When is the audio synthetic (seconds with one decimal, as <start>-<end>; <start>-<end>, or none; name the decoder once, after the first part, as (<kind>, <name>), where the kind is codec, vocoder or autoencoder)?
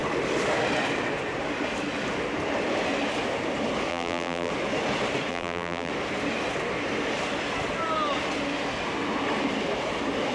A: 3.9-4.5 (vocoder, BigVGAN v2); 5.3-5.9